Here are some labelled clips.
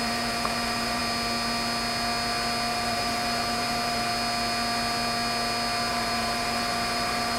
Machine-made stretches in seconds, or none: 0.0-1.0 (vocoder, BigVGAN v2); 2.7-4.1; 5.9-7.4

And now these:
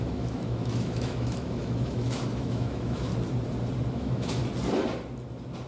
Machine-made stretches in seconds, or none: 0.0-3.1 (autoencoder, DAC-VAE); 3.9-4.4

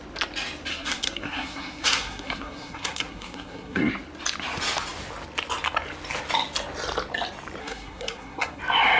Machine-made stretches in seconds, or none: 0.7-3.9 (codec, SNAC); 7.6-8.6

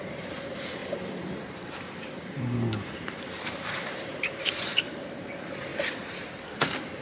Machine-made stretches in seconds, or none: 0.0-5.7 (vocoder, BigVGAN v2)

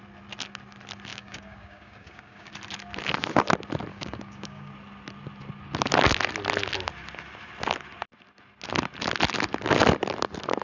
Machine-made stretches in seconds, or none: 1.1-2.5 (codec, DAC); 3.9-4.7

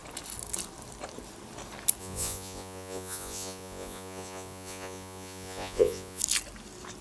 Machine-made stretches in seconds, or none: 2.0-6.2 (vocoder, Vocos)